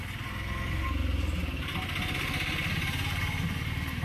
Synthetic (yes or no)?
no